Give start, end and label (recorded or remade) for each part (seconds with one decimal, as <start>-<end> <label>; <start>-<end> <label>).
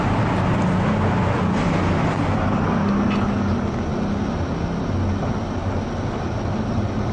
0.0-7.1 recorded